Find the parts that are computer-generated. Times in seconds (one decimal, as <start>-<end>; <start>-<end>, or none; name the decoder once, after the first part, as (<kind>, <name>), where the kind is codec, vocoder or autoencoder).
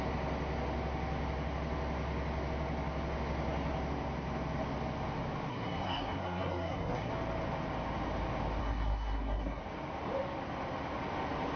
5.5-7.1 (codec, SNAC); 8.6-9.6